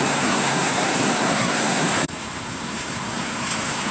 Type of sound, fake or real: fake